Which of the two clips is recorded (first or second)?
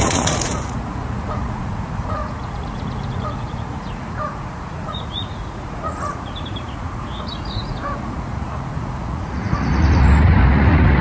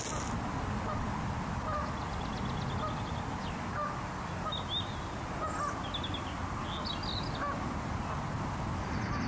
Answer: second